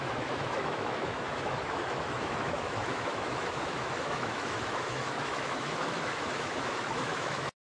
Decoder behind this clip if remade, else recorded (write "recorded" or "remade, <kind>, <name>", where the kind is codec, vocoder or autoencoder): remade, autoencoder, DAC-VAE